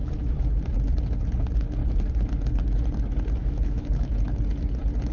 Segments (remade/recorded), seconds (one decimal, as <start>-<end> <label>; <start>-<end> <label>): 0.0-0.5 remade; 0.5-3.4 recorded; 3.4-4.1 remade; 4.1-5.1 recorded